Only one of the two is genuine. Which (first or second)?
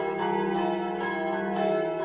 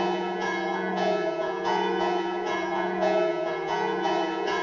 first